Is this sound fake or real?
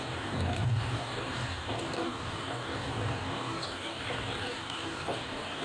fake